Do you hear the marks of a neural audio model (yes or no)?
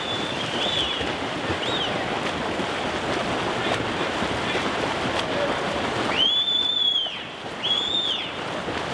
no